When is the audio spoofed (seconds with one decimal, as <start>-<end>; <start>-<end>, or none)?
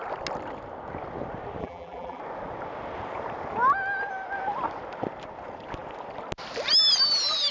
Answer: 1.6-2.2